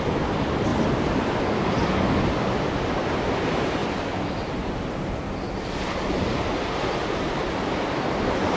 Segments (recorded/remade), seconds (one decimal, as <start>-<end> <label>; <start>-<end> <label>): 0.0-0.7 recorded; 0.7-1.4 remade; 1.4-8.6 recorded